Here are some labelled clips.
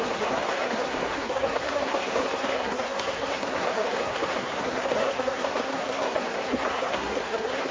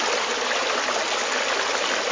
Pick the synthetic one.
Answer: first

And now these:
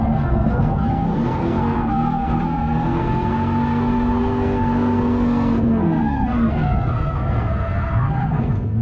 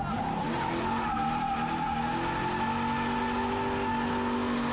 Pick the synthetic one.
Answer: first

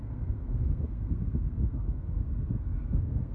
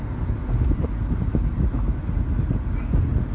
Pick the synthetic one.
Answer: first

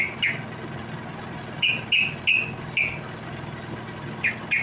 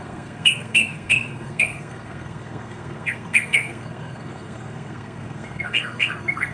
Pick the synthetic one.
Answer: second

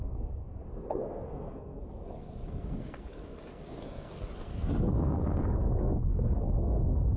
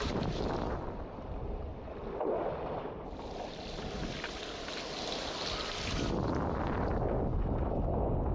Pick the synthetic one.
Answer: first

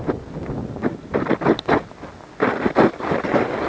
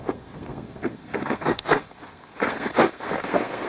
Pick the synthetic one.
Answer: second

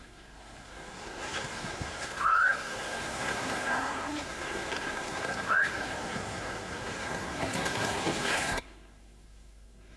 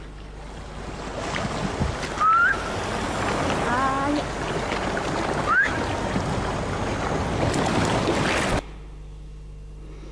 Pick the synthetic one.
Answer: first